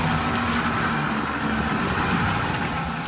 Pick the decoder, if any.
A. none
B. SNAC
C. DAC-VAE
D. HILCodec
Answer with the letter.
A